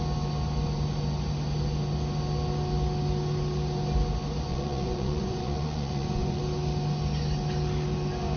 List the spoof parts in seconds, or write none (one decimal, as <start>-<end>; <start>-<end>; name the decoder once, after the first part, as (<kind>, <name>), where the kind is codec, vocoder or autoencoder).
4.5-6.4 (vocoder, Vocos)